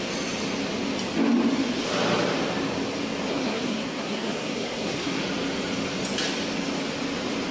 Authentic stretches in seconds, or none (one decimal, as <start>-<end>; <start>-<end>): 0.0-3.3; 5.2-7.5